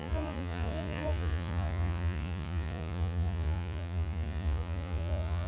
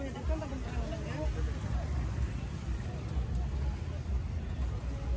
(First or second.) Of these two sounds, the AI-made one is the first